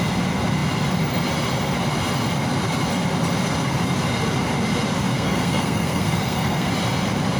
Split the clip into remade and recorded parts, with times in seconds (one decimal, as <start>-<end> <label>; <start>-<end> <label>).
0.0-5.1 recorded; 5.1-6.7 remade; 6.7-7.4 recorded